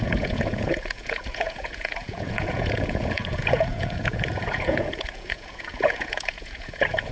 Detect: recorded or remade remade